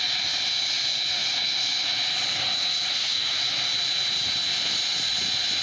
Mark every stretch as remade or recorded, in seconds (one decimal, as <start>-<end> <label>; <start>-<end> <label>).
0.0-3.0 recorded; 3.0-3.5 remade; 3.5-5.6 recorded

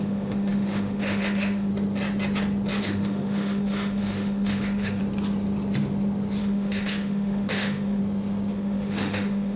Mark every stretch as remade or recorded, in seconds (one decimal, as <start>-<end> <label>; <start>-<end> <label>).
0.0-1.7 remade; 1.7-2.8 recorded; 2.8-5.0 remade; 5.0-6.4 recorded; 6.4-8.0 remade; 8.0-8.5 recorded; 8.5-9.6 remade

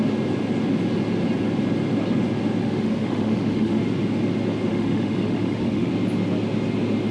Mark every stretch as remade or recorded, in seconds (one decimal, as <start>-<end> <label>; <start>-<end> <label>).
0.0-2.6 recorded; 2.6-3.8 remade; 3.8-4.7 recorded; 4.7-5.9 remade; 5.9-7.1 recorded

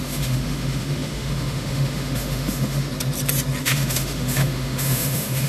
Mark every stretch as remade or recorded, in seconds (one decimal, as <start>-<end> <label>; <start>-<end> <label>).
0.0-2.9 remade; 2.9-3.6 recorded; 3.6-5.5 remade

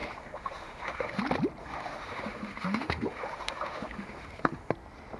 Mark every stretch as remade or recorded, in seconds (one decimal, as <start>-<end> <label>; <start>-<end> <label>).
0.0-1.2 remade; 1.2-1.6 recorded; 1.6-4.7 remade; 4.7-5.2 recorded

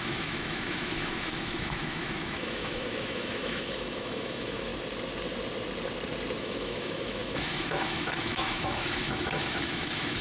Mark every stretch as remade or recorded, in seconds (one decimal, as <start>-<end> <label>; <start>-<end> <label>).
0.0-4.7 remade; 4.7-6.4 recorded; 6.4-10.2 remade